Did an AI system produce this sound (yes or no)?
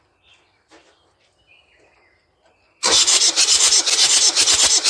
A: no